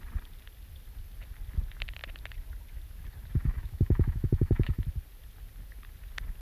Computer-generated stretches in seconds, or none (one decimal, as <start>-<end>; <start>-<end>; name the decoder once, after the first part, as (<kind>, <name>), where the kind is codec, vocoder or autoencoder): 3.4-4.8 (autoencoder, DAC-VAE)